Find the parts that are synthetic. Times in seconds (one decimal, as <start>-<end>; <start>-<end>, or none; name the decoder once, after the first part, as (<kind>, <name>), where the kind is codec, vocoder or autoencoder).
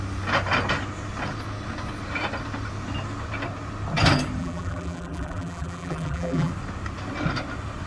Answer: 4.4-6.5 (vocoder, BigVGAN v2)